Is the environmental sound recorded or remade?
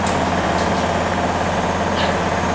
recorded